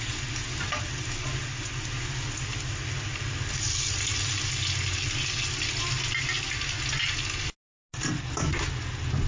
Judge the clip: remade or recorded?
recorded